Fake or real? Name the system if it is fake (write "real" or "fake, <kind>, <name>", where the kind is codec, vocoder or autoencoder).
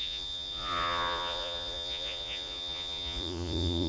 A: fake, vocoder, Vocos